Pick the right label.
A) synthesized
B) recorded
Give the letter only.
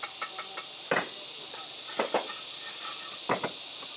B